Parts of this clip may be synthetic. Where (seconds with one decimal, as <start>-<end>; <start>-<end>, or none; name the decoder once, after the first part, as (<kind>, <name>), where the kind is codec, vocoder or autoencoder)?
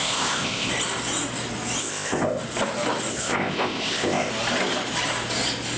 0.0-0.7 (codec, ZipCodec); 1.8-2.4; 3.1-4.3